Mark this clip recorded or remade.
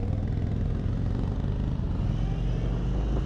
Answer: recorded